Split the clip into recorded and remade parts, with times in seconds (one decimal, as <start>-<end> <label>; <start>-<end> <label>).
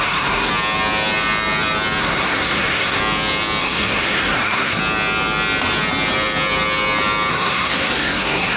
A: 0.0-0.5 remade; 0.5-2.0 recorded; 2.0-3.0 remade; 3.0-3.6 recorded; 3.6-4.8 remade; 4.8-7.3 recorded; 7.3-8.6 remade